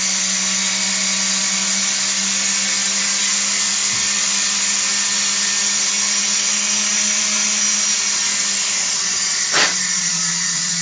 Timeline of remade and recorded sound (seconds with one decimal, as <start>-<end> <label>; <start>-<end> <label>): 0.0-8.8 recorded; 8.8-10.8 remade